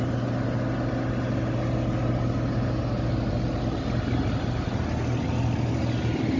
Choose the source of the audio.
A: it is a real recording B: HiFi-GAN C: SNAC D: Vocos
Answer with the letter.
A